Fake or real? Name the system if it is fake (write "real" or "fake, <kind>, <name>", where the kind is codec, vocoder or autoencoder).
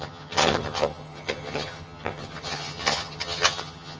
fake, vocoder, HiFi-GAN